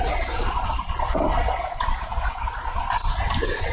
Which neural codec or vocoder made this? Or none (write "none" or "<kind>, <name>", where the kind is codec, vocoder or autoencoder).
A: none